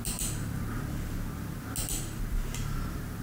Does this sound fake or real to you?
real